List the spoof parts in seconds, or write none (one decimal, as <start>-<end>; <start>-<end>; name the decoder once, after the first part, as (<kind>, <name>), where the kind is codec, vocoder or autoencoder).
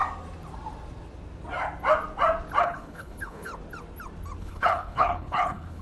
2.6-3.5 (codec, HILCodec); 4.4-5.8